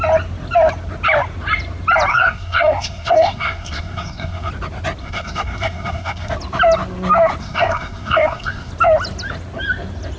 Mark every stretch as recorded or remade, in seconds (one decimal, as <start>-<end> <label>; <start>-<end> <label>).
0.0-2.1 recorded; 2.1-4.5 remade; 4.5-5.0 recorded; 5.0-6.3 remade; 6.3-7.4 recorded; 7.4-8.7 remade; 8.7-10.2 recorded